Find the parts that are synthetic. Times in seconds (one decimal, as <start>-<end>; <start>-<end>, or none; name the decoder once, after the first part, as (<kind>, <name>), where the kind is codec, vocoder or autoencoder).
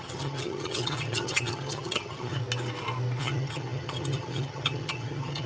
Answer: 0.0-2.4 (vocoder, HiFi-GAN); 3.2-5.5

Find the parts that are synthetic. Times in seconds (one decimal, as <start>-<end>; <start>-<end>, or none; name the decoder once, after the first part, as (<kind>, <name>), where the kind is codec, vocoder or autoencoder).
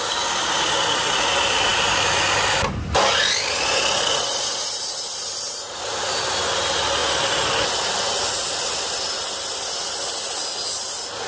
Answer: none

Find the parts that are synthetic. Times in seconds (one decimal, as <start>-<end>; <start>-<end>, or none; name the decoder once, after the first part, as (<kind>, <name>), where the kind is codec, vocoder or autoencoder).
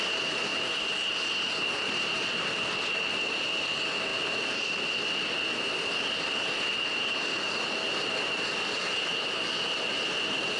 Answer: none